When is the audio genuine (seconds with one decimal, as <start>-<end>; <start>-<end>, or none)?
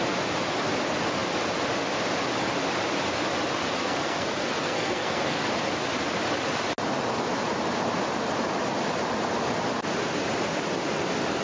0.0-3.8; 5.5-11.4